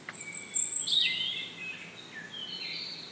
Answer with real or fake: real